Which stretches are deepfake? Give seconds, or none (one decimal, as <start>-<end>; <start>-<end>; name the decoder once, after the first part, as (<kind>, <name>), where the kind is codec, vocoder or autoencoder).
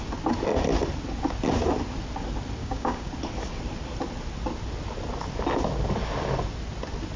2.6-3.1 (codec, DAC)